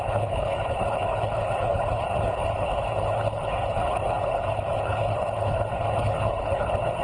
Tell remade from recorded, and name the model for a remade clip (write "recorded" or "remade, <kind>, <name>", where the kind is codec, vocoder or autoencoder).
remade, codec, HILCodec